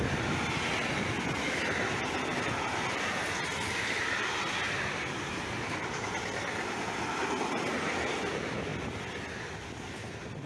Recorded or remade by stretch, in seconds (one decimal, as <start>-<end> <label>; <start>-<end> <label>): 0.0-10.5 recorded

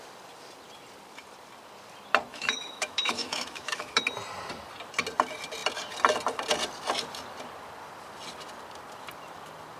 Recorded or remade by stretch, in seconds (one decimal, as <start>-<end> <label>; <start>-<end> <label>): 0.0-2.3 recorded; 2.3-4.0 remade; 4.0-9.8 recorded

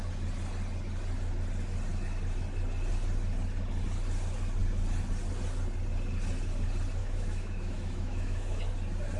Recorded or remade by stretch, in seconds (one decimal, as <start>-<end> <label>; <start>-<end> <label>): 0.0-7.0 recorded; 7.0-8.6 remade; 8.6-9.2 recorded